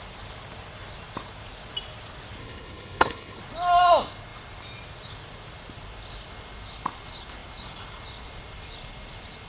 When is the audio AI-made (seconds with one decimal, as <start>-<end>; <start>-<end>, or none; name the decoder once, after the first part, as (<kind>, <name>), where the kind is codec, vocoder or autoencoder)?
2.4-3.4 (codec, HILCodec)